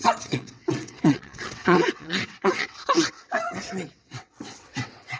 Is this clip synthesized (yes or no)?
yes